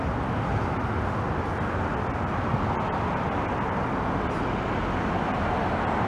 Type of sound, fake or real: real